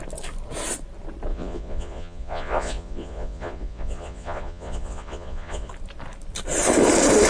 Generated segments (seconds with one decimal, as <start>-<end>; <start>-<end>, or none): 1.3-5.7